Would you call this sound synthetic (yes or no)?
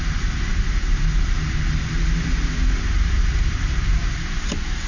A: yes